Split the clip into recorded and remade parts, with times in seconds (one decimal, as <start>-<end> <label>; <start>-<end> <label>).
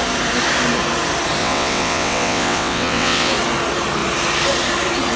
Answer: 0.0-1.4 recorded; 1.4-3.3 remade; 3.3-5.2 recorded